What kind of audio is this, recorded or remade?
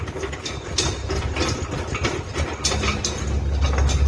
recorded